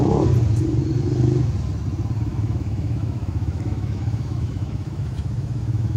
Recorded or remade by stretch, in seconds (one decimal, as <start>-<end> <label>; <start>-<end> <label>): 0.0-2.3 recorded; 2.3-6.0 remade